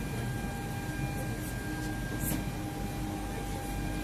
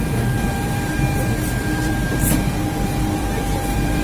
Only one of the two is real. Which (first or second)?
first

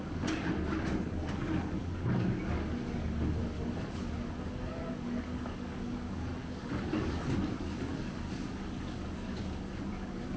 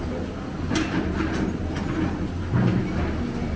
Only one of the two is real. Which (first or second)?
second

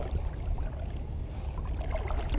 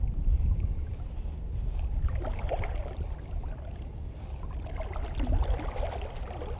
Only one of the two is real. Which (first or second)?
first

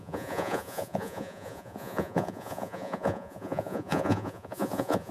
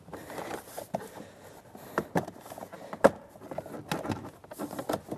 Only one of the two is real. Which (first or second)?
second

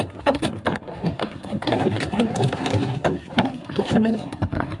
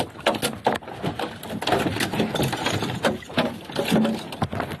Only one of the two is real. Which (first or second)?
second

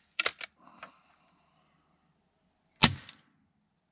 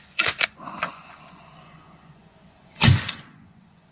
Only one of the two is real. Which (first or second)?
first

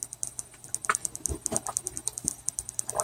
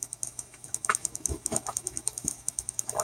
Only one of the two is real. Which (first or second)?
first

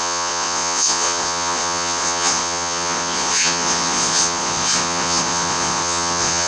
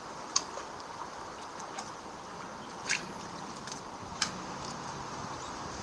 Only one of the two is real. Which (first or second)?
second